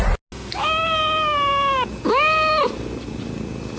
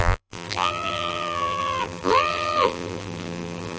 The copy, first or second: second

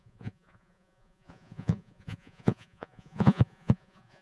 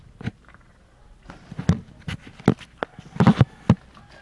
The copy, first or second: first